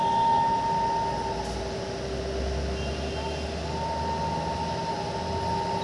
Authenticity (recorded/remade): recorded